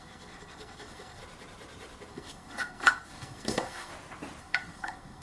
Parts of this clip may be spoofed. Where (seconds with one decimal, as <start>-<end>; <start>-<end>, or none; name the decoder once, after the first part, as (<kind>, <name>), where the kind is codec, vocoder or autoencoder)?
0.0-1.2 (codec, SNAC); 2.1-3.9; 4.4-5.2